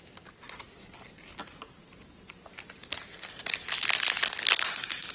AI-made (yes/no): no